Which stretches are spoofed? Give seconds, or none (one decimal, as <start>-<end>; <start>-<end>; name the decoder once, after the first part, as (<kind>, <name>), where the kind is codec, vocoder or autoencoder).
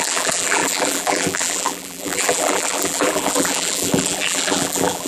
0.0-5.1 (vocoder, BigVGAN v2)